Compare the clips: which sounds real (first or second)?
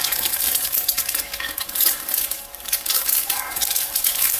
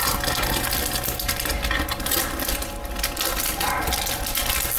second